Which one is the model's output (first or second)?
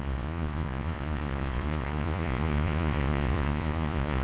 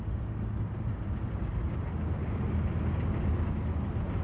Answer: first